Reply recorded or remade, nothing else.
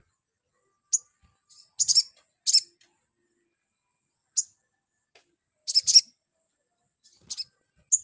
recorded